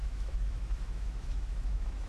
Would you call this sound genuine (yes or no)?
no